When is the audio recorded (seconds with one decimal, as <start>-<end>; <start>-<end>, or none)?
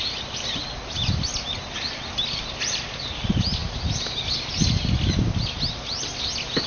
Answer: 0.0-6.7